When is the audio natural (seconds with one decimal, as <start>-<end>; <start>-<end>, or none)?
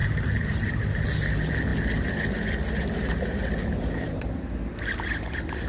1.0-1.7; 4.4-5.7